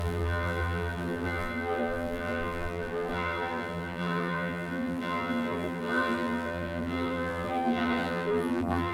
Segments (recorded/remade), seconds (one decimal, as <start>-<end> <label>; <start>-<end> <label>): 0.0-8.9 remade